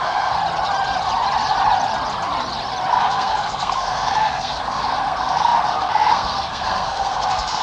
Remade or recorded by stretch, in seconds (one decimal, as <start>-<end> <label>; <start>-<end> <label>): 0.0-0.4 remade; 0.4-2.9 recorded; 2.9-7.6 remade